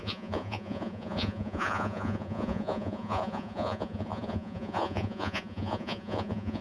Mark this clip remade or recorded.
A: remade